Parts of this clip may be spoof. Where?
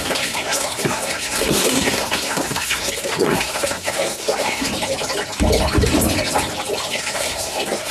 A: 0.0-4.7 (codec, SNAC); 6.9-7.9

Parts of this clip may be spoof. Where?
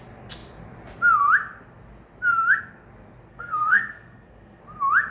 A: 3.3-4.6 (codec, SNAC)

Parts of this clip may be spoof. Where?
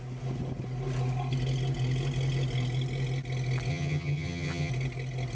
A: 3.7-4.7 (vocoder, HiFi-GAN)